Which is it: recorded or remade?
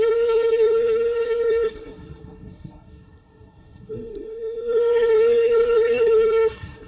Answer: remade